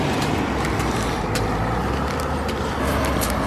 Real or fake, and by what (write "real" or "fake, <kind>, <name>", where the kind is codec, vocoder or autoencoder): real